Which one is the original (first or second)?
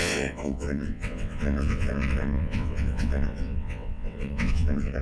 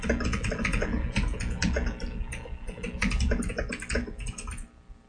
second